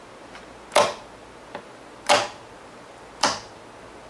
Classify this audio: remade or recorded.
recorded